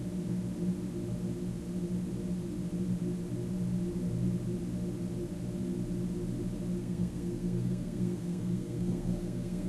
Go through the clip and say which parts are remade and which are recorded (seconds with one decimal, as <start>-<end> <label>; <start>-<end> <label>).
0.0-6.8 recorded; 6.8-9.7 remade